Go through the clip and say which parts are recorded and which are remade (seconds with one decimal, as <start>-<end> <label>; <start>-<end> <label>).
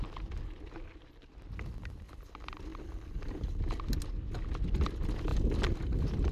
0.0-6.3 recorded